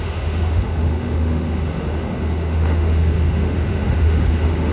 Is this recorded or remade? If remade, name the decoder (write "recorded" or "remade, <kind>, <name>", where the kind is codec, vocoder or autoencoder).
remade, autoencoder, DAC-VAE